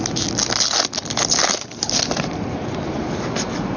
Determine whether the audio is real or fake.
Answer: real